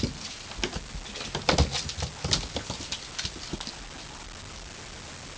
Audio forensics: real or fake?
real